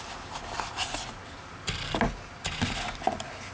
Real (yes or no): yes